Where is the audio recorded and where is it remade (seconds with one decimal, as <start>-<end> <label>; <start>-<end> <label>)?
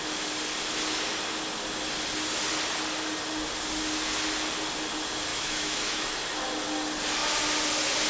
0.0-5.3 recorded; 5.3-6.1 remade; 6.1-8.1 recorded